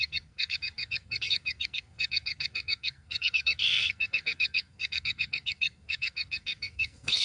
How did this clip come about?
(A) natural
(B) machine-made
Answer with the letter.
B